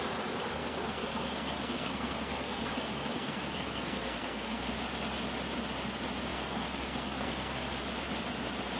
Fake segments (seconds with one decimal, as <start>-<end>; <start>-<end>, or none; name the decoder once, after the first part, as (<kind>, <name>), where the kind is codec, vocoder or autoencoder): 0.5-4.7 (codec, SNAC); 6.3-7.8